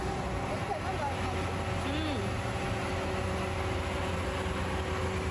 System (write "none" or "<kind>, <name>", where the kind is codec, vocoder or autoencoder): none